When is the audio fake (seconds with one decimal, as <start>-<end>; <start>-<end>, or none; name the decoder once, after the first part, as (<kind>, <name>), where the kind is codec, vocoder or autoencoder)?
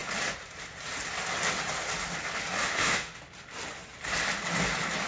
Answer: 2.6-3.2 (autoencoder, DAC-VAE)